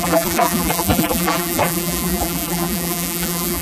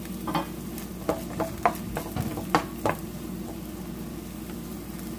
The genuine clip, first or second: second